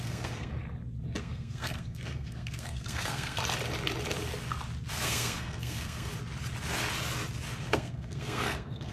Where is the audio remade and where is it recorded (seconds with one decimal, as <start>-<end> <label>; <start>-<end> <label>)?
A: 0.0-0.5 remade; 0.5-1.2 recorded; 1.2-3.4 remade; 3.4-4.9 recorded; 4.9-6.1 remade; 6.1-7.6 recorded; 7.6-8.9 remade